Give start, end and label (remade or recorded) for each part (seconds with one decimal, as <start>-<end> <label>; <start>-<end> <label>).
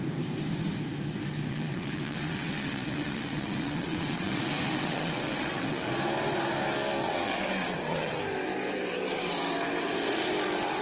0.0-1.5 recorded; 1.5-5.9 remade; 5.9-7.0 recorded; 7.0-8.2 remade; 8.2-10.8 recorded